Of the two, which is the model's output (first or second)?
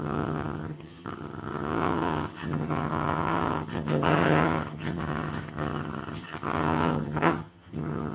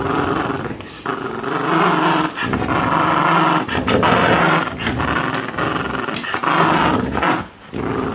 first